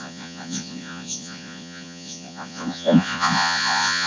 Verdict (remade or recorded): remade